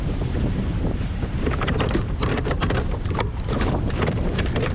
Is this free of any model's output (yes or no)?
no